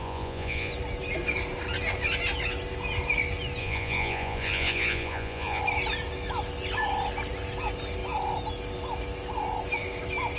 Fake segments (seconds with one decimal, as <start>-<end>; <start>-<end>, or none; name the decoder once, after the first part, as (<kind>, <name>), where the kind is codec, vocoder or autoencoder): 0.0-0.7 (vocoder, Vocos); 3.6-5.6